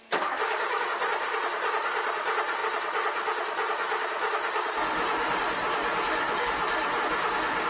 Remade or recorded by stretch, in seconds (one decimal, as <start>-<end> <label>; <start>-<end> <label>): 0.0-7.7 recorded